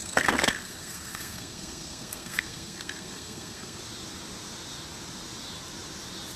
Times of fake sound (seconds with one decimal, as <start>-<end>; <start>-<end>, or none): 0.0-3.8